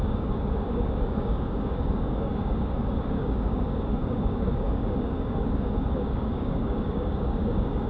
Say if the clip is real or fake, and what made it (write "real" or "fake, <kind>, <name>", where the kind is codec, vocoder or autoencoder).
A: fake, codec, DAC